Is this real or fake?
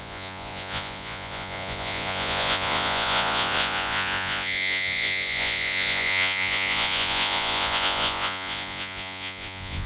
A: fake